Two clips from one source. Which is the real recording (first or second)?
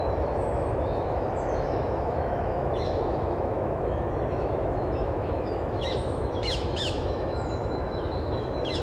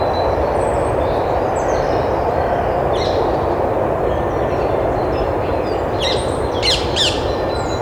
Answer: second